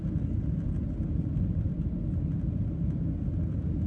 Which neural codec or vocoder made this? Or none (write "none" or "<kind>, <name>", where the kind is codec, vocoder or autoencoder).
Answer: none